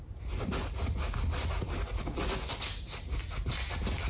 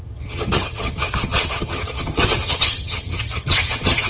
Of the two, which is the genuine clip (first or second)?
first